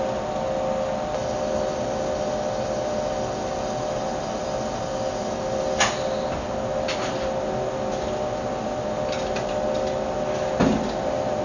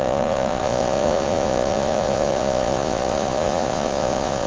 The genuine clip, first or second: first